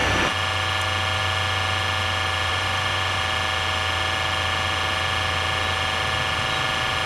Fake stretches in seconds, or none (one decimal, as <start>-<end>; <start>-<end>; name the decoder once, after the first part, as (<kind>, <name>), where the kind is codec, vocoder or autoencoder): 2.5-3.2 (vocoder, Vocos)

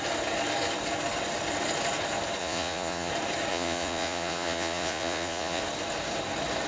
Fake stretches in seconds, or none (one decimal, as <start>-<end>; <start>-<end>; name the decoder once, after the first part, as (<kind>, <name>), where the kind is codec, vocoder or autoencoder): 2.4-3.1 (vocoder, Vocos); 3.5-5.6